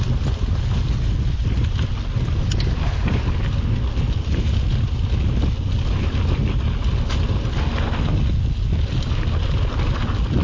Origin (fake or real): real